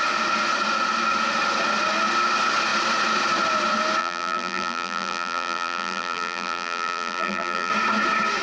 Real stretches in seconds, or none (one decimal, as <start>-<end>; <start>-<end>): 0.0-4.0; 7.7-8.4